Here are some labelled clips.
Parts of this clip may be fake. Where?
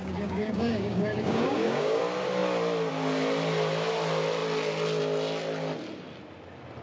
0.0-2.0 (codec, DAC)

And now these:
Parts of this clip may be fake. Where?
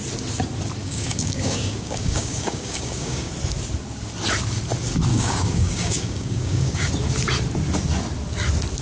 0.8-3.3 (codec, DAC); 5.1-6.9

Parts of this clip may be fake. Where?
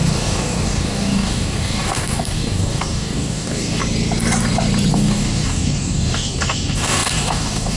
0.0-3.8 (codec, DAC); 4.9-7.8